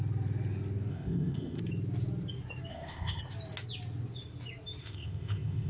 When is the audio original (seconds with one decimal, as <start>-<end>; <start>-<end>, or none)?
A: 0.0-0.9; 1.6-2.7; 3.2-4.8